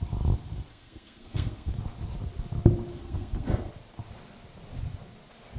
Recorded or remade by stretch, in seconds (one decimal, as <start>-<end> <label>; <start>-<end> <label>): 0.0-0.7 recorded; 0.7-1.7 remade; 1.7-2.9 recorded; 2.9-3.7 remade; 3.7-5.6 recorded